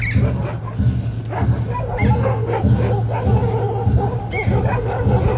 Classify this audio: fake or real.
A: real